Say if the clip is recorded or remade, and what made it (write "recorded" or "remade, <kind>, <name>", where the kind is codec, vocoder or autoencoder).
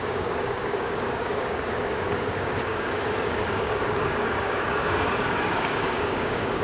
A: remade, codec, DAC